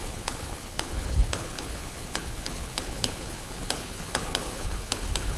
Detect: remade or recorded remade